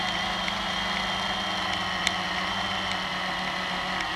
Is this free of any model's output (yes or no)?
yes